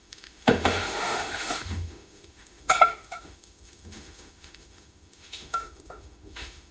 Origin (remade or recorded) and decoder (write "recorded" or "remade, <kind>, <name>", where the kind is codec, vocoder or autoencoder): remade, autoencoder, DAC-VAE